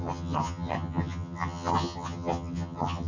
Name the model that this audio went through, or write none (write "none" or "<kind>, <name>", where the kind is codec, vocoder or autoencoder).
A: vocoder, HiFi-GAN